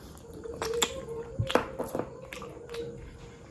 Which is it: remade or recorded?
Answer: recorded